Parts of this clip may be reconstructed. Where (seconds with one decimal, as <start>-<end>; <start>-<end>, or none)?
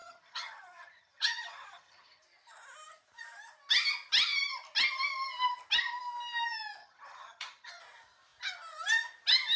0.0-2.2; 6.8-7.8